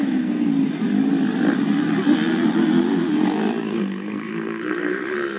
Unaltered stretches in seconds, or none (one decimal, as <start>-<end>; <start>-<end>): 0.5-3.7